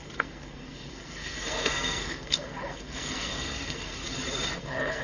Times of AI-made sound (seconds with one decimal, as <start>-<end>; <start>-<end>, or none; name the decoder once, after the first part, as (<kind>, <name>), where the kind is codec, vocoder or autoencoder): 0.0-4.0 (codec, SNAC); 4.6-5.0